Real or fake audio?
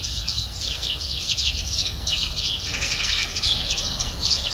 fake